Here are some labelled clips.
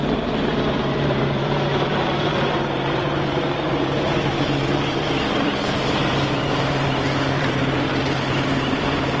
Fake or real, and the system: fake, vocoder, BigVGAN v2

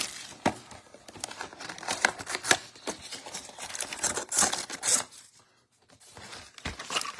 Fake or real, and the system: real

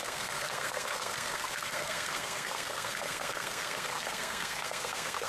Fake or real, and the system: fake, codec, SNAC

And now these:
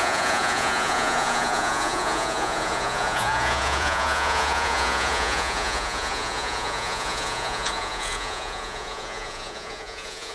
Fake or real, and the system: fake, vocoder, Vocos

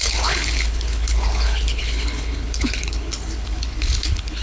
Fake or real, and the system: fake, codec, HILCodec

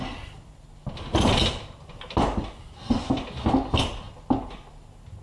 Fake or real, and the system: real